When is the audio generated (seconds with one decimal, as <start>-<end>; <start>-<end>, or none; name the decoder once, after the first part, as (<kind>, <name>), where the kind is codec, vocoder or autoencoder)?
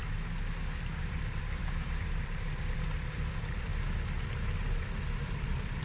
1.0-3.7 (vocoder, BigVGAN v2); 4.8-5.8